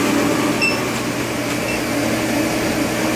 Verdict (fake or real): real